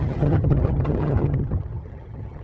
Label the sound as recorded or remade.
remade